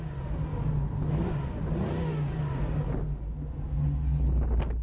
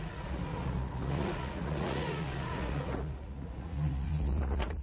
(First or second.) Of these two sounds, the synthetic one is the second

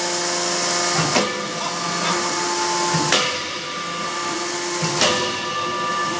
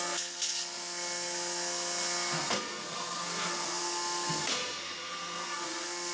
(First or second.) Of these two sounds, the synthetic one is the second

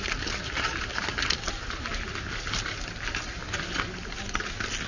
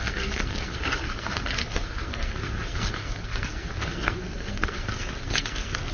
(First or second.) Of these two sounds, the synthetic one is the second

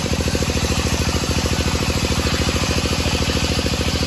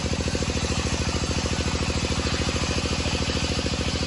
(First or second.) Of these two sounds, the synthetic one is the first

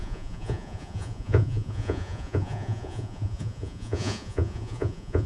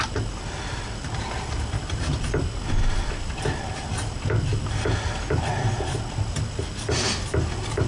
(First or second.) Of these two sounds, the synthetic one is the first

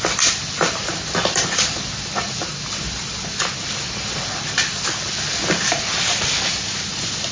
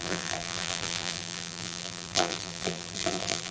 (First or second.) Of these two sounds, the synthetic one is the second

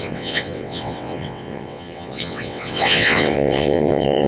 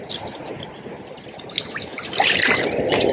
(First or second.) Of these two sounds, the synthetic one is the first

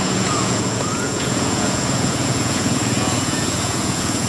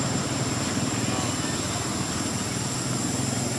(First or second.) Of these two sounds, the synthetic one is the first